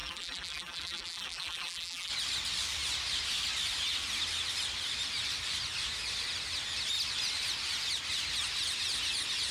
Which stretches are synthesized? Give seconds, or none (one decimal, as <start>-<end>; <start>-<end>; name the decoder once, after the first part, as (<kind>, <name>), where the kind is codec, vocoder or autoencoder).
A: 0.0-2.1 (vocoder, BigVGAN v2)